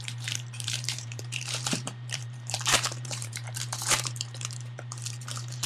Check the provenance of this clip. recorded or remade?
remade